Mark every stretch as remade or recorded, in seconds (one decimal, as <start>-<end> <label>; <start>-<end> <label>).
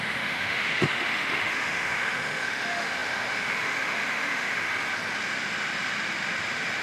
0.0-4.6 remade; 4.6-6.8 recorded